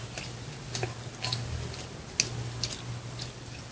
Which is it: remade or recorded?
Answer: recorded